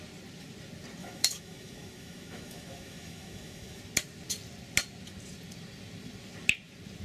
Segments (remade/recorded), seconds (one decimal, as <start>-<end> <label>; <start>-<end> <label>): 0.0-1.0 recorded; 1.0-3.8 remade; 3.8-7.0 recorded